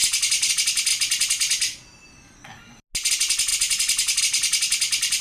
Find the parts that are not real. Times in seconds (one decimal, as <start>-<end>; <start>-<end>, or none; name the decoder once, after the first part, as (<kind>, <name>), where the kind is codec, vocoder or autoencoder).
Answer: none